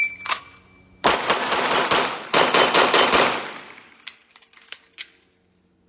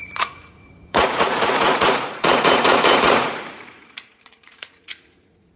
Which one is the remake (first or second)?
second